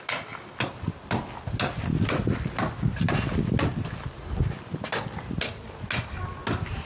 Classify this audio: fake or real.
real